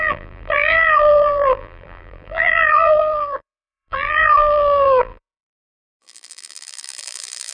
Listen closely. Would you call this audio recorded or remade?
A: remade